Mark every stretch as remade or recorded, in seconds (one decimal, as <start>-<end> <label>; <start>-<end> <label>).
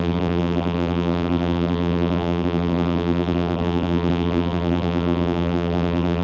0.0-6.2 remade